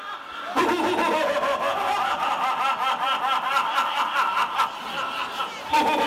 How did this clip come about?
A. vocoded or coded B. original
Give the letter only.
B